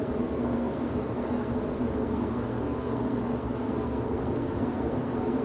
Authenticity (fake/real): fake